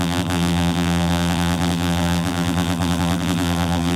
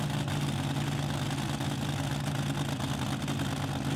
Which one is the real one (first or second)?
second